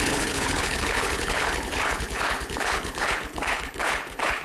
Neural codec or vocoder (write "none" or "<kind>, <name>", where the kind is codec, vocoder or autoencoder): codec, HILCodec